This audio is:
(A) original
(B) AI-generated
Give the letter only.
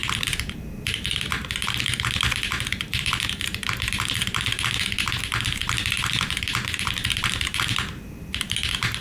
B